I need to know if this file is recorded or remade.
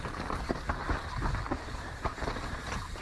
recorded